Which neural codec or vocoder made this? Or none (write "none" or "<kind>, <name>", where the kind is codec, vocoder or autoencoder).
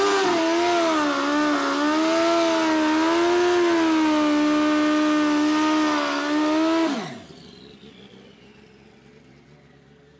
none